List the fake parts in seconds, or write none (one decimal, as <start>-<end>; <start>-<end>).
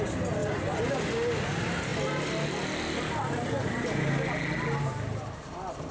none